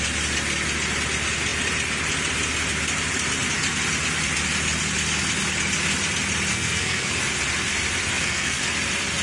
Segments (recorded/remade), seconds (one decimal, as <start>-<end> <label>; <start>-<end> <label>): 0.0-6.5 recorded; 6.5-7.1 remade; 7.1-8.1 recorded; 8.1-8.6 remade; 8.6-9.2 recorded